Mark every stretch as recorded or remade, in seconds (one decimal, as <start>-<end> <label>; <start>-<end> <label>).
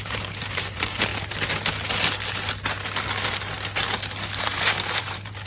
0.0-1.1 remade; 1.1-4.4 recorded; 4.4-5.5 remade